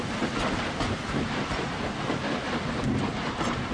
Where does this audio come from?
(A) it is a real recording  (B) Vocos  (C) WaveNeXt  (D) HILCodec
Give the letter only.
A